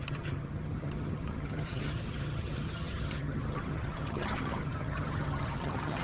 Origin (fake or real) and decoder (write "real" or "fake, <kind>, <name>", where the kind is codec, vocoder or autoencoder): fake, vocoder, HiFi-GAN